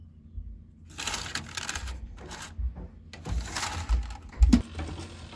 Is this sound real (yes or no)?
yes